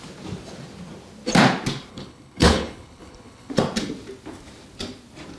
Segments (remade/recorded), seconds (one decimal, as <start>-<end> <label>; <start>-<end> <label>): 0.0-1.9 recorded; 1.9-3.5 remade; 3.5-5.4 recorded